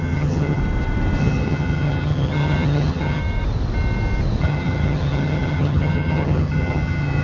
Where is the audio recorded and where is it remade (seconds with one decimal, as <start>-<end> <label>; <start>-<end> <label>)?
0.0-0.6 remade; 0.6-1.2 recorded; 1.2-3.2 remade; 3.2-4.4 recorded; 4.4-7.2 remade